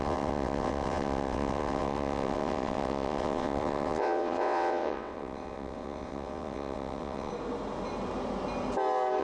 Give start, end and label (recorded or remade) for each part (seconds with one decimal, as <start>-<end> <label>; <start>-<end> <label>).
0.0-7.3 remade; 7.3-9.2 recorded